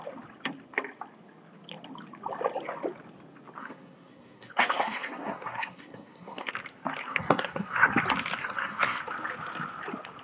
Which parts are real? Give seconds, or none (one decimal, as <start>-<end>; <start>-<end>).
0.0-3.6; 6.5-7.1; 7.9-8.4; 9.0-10.2